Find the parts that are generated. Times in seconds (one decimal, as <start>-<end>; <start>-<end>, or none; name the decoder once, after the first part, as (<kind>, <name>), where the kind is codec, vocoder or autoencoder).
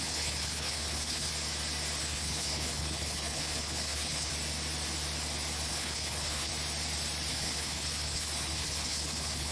0.0-1.3 (codec, HILCodec); 2.0-4.3; 5.7-6.5; 7.3-9.5